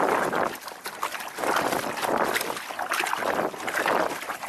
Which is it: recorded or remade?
recorded